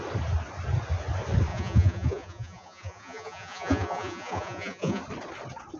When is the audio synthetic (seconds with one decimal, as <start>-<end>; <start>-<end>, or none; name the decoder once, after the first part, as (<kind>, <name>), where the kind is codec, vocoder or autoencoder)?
1.5-5.0 (vocoder, Vocos)